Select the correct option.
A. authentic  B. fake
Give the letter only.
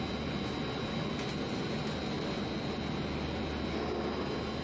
A